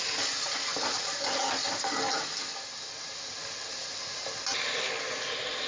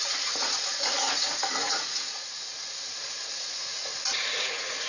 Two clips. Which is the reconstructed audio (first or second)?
second